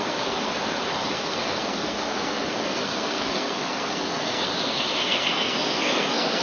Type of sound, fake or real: fake